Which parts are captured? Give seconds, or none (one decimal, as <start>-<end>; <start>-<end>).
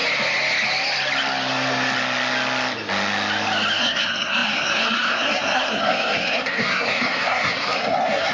0.0-3.8